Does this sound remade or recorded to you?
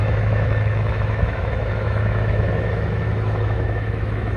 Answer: remade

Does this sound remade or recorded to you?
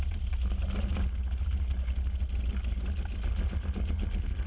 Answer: recorded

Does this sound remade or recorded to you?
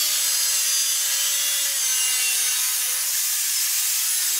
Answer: recorded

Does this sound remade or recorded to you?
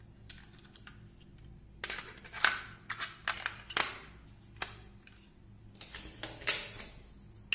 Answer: recorded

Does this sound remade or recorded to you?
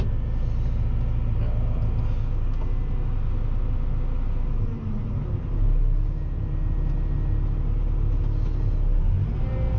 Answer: recorded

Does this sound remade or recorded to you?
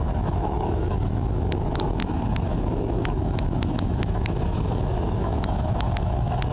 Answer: remade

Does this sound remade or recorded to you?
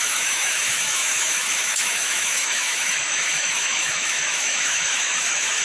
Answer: remade